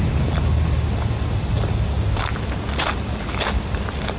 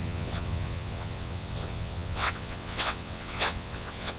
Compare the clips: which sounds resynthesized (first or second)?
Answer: second